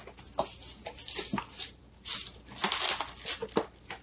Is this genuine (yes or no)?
yes